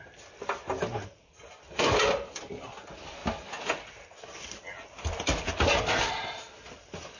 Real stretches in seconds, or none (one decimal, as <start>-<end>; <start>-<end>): 0.0-7.2